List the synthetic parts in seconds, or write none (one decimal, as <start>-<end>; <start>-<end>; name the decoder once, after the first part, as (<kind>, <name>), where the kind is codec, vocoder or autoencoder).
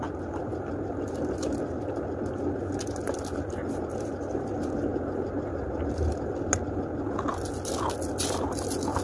none